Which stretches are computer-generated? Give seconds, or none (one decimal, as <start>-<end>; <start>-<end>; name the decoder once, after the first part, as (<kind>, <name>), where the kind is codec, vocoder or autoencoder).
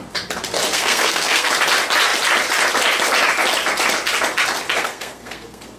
0.7-1.5 (codec, SNAC); 4.8-5.8